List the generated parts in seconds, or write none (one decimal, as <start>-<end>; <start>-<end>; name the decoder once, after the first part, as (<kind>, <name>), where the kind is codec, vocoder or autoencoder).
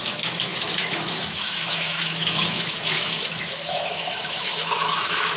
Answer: 0.0-5.4 (autoencoder, DAC-VAE)